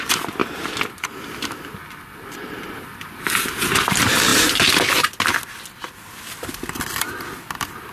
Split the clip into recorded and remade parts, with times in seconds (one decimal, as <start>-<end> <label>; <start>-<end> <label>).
0.0-7.9 recorded